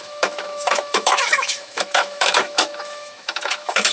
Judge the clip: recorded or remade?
remade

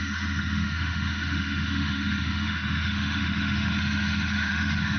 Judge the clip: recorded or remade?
remade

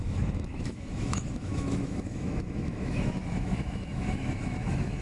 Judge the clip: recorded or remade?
remade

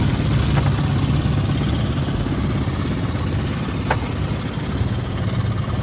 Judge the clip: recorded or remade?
recorded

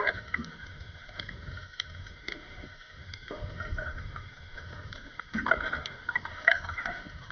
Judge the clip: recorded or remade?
remade